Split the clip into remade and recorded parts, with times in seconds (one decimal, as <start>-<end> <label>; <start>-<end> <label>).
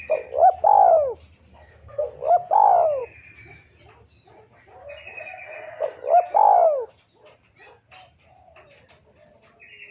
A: 0.0-1.5 recorded; 1.5-2.1 remade; 2.1-9.9 recorded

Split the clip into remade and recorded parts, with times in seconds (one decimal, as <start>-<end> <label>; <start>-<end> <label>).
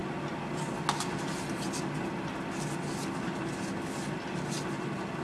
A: 0.0-5.2 recorded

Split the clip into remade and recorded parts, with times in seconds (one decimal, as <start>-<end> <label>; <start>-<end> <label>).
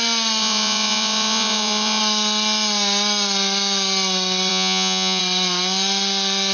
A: 0.0-0.4 recorded; 0.4-2.0 remade; 2.0-4.5 recorded; 4.5-5.2 remade; 5.2-6.5 recorded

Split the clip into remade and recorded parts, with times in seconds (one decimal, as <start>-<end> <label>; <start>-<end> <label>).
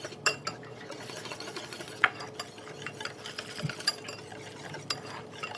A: 0.0-0.5 recorded; 0.5-2.2 remade; 2.2-5.6 recorded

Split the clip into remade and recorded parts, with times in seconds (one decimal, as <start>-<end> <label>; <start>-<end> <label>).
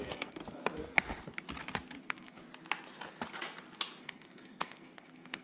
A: 0.0-0.4 remade; 0.4-2.0 recorded; 2.0-2.4 remade; 2.4-4.0 recorded; 4.0-5.4 remade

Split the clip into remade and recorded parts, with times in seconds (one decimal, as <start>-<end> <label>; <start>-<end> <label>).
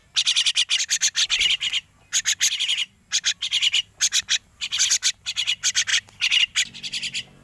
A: 0.0-7.4 recorded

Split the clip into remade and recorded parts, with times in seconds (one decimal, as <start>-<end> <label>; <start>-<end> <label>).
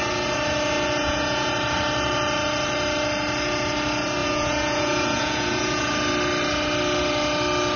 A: 0.0-1.0 recorded; 1.0-1.5 remade; 1.5-4.2 recorded; 4.2-5.9 remade; 5.9-7.8 recorded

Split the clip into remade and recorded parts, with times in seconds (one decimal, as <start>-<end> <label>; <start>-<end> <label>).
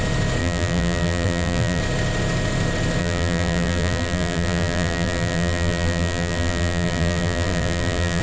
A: 0.0-0.4 recorded; 0.4-1.8 remade; 1.8-3.0 recorded; 3.0-8.2 remade